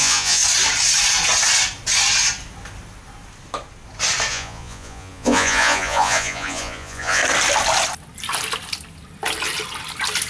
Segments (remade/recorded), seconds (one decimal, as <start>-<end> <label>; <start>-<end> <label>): 0.0-0.4 remade; 0.4-4.3 recorded; 4.3-7.2 remade; 7.2-10.3 recorded